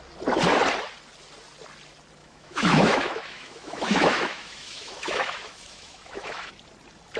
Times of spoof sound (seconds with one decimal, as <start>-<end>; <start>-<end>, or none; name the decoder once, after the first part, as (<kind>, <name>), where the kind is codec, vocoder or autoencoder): 2.2-6.5 (autoencoder, DAC-VAE)